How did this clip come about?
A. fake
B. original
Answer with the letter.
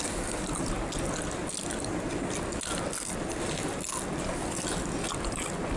B